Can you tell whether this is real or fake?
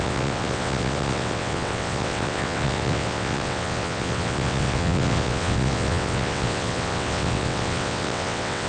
fake